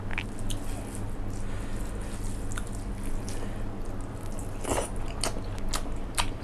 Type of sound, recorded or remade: recorded